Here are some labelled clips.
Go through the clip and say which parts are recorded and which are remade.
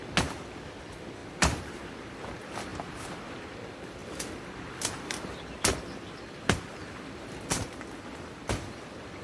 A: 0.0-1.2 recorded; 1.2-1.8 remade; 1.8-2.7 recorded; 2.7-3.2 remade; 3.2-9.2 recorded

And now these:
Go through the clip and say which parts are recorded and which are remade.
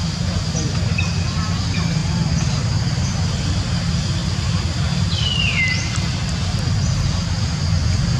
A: 0.0-8.2 recorded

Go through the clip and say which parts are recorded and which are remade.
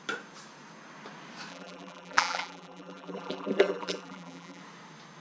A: 0.0-1.5 recorded; 1.5-4.6 remade; 4.6-5.2 recorded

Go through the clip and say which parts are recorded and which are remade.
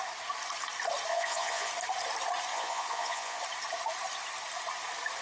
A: 0.0-1.1 recorded; 1.1-1.7 remade; 1.7-2.5 recorded; 2.5-3.4 remade; 3.4-5.2 recorded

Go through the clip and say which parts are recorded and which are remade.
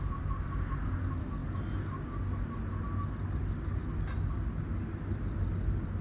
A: 0.0-6.0 recorded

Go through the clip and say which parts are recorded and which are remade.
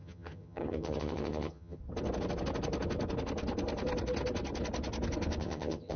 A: 0.0-1.8 remade; 1.8-5.4 recorded; 5.4-6.0 remade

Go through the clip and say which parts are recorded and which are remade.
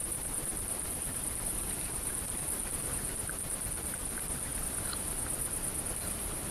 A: 0.0-4.5 remade; 4.5-5.9 recorded; 5.9-6.5 remade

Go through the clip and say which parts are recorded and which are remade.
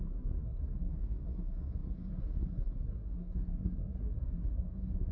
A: 0.0-5.1 remade